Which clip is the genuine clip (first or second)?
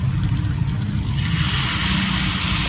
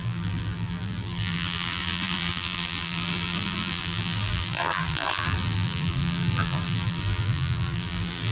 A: first